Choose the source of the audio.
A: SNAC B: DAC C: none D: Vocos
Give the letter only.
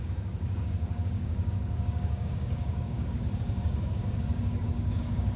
B